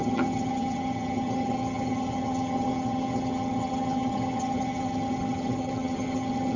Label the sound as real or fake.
fake